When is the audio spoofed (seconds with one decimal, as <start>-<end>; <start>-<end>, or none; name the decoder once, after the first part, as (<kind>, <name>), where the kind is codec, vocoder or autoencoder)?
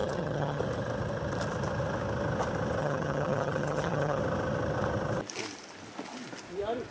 0.0-0.6 (vocoder, HiFi-GAN); 2.8-4.2